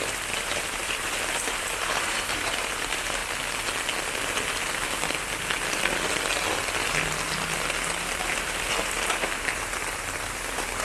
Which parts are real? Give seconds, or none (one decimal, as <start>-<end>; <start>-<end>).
3.2-8.0